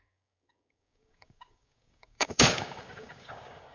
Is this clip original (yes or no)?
no